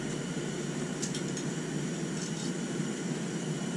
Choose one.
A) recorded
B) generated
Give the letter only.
A